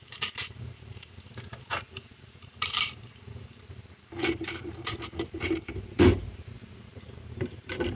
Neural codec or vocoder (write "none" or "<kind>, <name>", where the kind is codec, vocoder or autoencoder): vocoder, BigVGAN v2